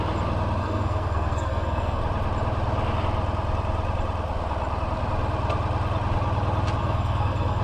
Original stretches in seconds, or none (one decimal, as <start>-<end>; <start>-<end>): 0.0-0.6; 2.0-6.8